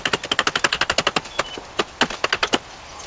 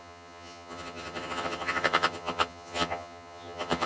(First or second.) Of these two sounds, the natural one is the first